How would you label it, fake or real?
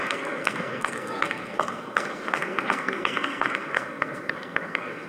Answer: fake